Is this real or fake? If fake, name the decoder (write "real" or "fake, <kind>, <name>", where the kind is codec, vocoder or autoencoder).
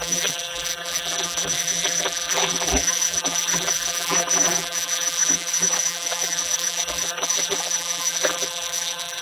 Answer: fake, vocoder, BigVGAN v2